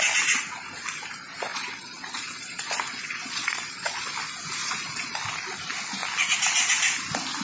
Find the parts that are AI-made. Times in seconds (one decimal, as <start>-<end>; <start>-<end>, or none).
1.5-4.1; 4.6-5.2